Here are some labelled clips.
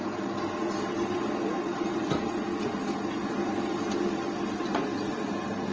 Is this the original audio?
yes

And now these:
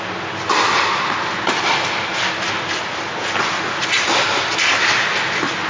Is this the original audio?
yes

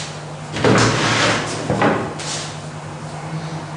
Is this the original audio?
yes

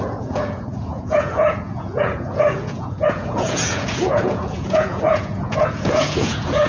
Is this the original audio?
no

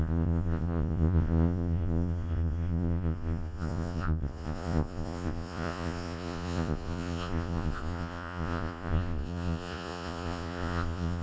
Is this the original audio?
no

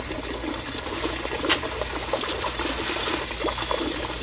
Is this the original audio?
yes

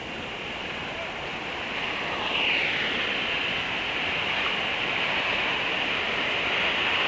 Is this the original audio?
yes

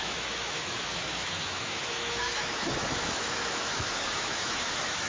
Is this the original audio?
no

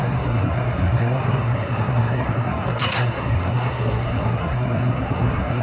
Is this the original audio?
no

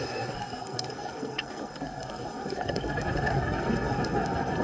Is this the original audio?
no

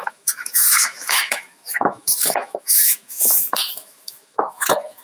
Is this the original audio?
no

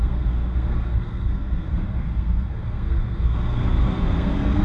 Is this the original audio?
no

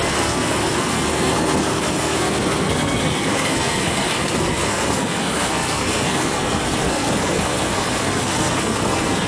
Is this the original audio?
no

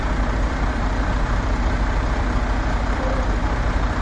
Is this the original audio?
no